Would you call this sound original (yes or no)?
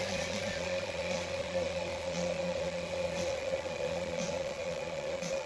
no